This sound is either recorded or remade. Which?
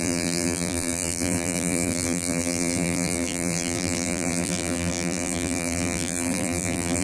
remade